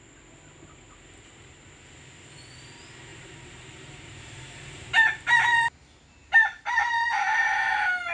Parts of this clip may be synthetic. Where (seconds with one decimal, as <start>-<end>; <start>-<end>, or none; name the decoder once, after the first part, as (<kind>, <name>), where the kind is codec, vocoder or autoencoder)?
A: 3.1-4.9 (vocoder, BigVGAN v2)